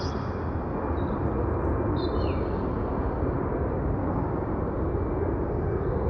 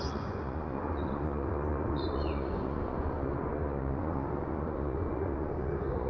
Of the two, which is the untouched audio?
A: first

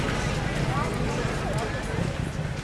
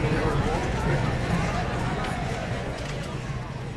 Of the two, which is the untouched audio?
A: first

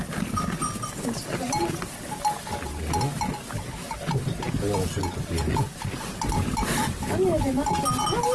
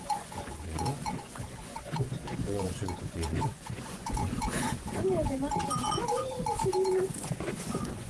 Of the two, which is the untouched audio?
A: first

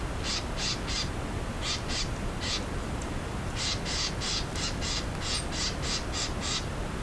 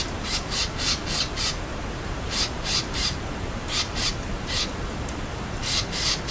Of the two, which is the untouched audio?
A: first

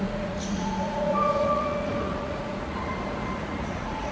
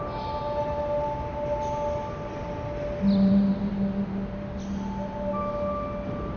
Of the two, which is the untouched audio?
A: second